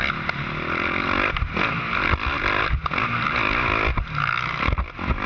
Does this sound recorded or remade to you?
recorded